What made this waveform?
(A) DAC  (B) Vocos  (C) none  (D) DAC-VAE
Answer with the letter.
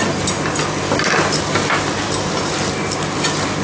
C